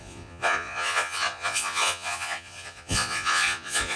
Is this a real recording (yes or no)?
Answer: no